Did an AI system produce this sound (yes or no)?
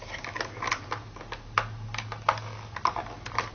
no